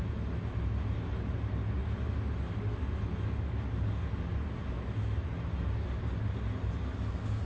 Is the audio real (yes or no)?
yes